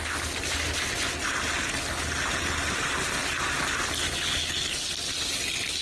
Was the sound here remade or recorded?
recorded